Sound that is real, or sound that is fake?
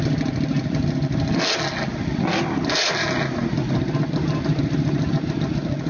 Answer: real